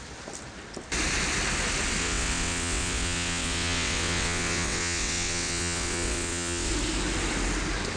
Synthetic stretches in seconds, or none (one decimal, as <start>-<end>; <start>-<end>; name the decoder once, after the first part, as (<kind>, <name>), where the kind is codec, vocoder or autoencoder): 2.0-6.7 (vocoder, WaveNeXt)